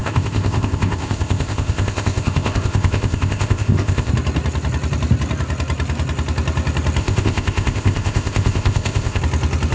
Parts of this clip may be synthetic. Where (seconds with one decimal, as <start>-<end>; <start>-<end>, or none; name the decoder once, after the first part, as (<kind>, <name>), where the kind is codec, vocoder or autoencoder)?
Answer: 0.0-4.1 (codec, ZipCodec); 7.0-9.2